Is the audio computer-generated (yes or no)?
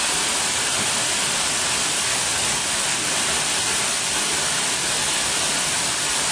yes